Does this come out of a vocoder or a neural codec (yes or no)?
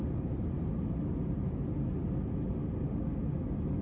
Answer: no